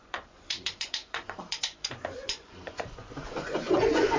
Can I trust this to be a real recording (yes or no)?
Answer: no